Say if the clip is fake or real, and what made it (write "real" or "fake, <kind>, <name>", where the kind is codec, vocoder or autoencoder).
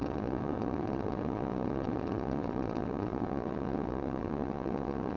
fake, vocoder, WaveNeXt